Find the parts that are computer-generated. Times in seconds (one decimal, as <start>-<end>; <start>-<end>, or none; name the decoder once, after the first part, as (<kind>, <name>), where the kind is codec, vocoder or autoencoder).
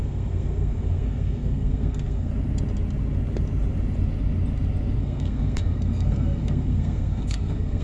0.0-2.3 (codec, SNAC); 5.0-7.8